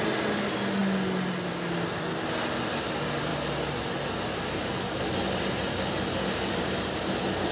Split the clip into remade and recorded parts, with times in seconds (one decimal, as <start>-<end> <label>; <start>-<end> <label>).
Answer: 0.0-7.5 recorded